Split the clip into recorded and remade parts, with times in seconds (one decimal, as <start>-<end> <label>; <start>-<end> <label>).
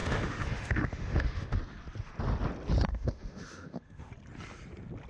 0.0-1.6 remade; 1.6-2.9 recorded; 2.9-4.1 remade; 4.1-5.1 recorded